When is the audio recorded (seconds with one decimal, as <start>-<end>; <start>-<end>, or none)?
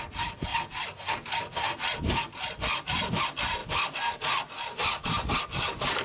0.0-6.0